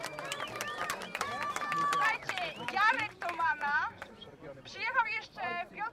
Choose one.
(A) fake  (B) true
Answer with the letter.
A